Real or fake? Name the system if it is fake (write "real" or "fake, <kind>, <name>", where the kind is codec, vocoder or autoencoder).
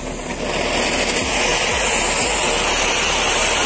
real